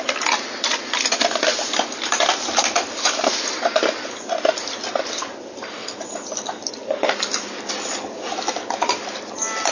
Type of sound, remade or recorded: recorded